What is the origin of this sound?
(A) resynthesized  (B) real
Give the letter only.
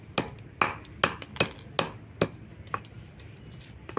B